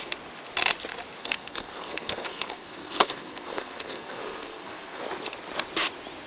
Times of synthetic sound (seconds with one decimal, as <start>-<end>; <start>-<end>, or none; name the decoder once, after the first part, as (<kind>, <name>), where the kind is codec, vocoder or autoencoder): 1.2-5.0 (codec, SNAC)